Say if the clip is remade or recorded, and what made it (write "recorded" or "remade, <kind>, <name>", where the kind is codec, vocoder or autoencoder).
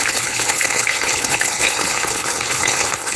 remade, codec, HILCodec